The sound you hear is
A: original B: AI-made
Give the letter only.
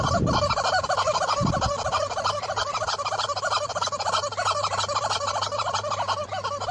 B